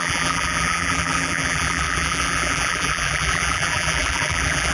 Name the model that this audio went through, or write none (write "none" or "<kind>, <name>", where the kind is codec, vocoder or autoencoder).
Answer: vocoder, BigVGAN v2